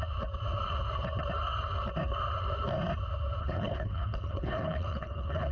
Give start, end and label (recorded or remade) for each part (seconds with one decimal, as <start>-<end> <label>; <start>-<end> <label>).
0.0-3.4 recorded; 3.4-5.5 remade